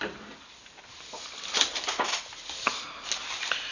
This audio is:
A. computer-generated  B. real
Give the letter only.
B